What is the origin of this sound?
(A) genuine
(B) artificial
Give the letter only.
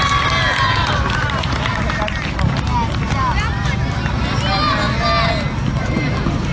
A